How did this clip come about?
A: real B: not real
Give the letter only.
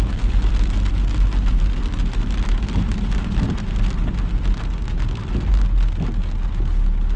A